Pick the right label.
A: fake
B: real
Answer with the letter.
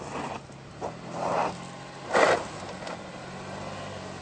B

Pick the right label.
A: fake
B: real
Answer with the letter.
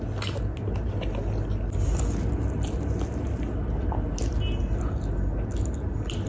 B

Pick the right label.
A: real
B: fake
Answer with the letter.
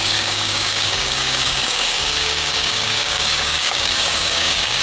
B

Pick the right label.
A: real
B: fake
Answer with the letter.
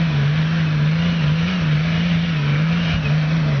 A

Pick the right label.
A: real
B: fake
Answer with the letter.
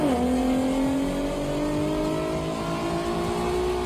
A